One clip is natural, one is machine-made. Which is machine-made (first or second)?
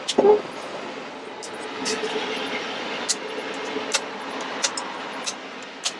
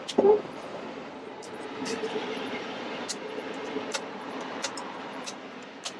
second